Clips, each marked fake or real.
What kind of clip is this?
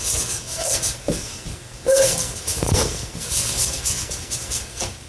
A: fake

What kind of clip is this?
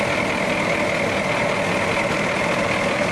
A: real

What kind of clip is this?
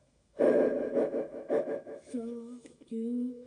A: fake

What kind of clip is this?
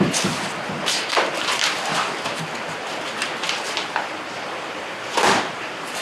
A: real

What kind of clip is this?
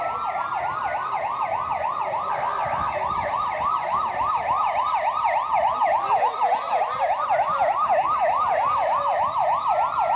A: real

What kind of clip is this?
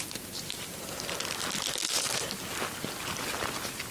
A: real